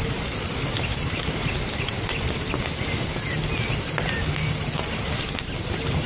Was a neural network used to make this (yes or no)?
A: no